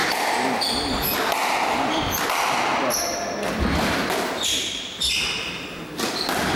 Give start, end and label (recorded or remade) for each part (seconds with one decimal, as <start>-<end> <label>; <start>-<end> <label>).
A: 0.0-6.6 recorded